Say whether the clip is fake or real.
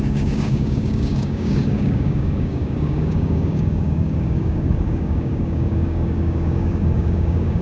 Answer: fake